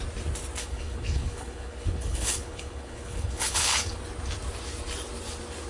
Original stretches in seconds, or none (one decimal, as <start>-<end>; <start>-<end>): 0.0-0.6; 4.0-5.7